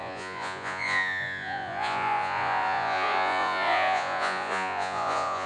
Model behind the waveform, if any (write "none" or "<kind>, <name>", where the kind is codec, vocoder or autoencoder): vocoder, Vocos